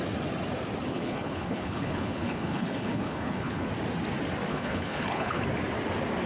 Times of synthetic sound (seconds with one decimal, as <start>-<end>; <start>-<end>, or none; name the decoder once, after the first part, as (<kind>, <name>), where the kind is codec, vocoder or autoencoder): 0.9-3.7 (codec, HILCodec); 4.5-5.4